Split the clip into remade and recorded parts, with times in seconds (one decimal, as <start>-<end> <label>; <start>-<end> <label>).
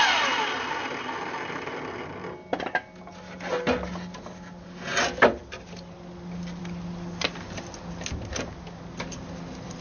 0.0-9.8 recorded